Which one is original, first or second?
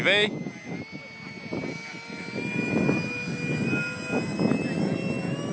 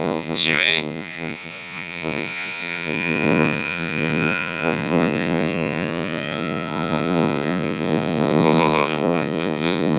first